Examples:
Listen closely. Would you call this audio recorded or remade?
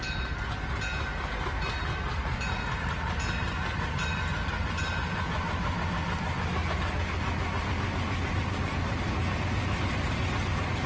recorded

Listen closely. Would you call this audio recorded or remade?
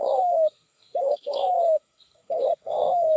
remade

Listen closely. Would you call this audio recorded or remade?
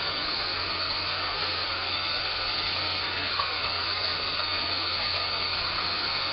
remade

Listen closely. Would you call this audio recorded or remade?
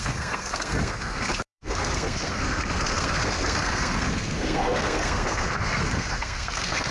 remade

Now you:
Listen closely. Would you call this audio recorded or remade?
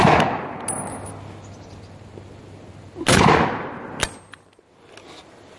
recorded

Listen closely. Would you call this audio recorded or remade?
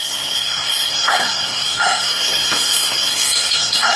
remade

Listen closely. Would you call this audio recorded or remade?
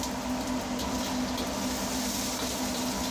recorded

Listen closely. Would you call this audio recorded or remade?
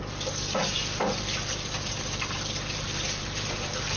remade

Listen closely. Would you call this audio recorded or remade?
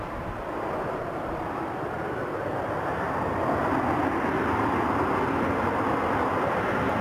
recorded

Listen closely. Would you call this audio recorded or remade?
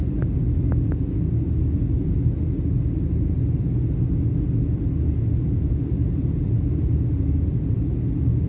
recorded